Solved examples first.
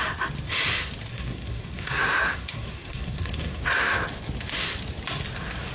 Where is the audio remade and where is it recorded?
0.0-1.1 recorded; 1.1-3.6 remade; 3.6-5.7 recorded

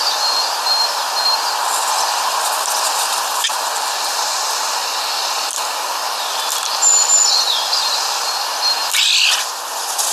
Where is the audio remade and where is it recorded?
0.0-10.1 recorded